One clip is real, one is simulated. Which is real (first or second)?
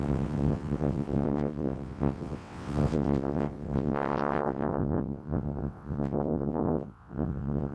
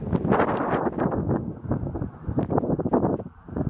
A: second